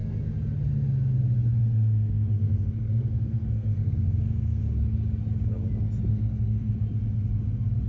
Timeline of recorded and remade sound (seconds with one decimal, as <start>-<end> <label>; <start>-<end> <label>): 0.0-1.6 recorded; 1.6-4.6 remade; 4.6-6.1 recorded; 6.1-6.7 remade; 6.7-7.9 recorded